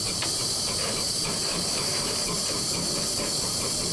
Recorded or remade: remade